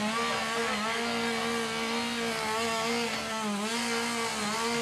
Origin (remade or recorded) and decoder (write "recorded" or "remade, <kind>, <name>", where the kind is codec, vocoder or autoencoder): recorded